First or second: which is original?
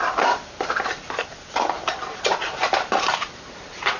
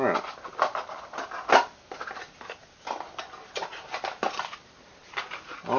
second